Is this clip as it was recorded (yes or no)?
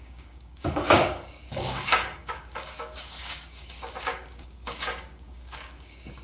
no